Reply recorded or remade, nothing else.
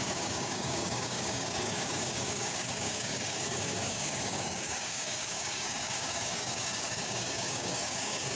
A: remade